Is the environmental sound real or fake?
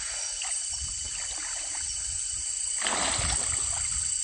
real